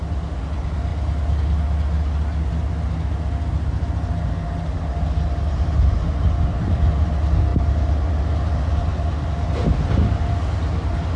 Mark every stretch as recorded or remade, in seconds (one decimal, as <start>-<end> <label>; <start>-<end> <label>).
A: 0.0-11.2 recorded